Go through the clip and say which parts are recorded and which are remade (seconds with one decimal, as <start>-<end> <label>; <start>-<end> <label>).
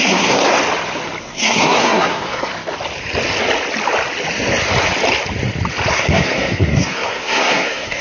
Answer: 0.0-0.4 remade; 0.4-1.2 recorded; 1.2-2.5 remade; 2.5-5.9 recorded; 5.9-8.0 remade